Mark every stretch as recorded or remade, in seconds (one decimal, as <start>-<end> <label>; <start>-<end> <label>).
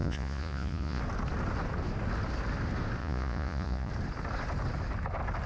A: 0.0-1.0 remade; 1.0-3.0 recorded; 3.0-3.9 remade; 3.9-5.5 recorded